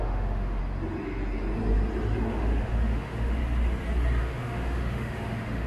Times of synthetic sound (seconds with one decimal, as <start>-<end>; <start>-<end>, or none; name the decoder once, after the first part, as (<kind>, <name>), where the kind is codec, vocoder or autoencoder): 0.0-0.6 (autoencoder, DAC-VAE); 2.3-3.4; 4.2-5.7